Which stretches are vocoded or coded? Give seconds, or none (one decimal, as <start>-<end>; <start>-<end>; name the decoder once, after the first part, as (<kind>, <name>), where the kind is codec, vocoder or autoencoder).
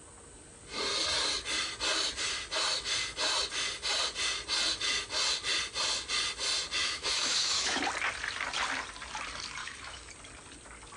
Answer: 6.8-7.8 (autoencoder, DAC-VAE); 9.6-10.1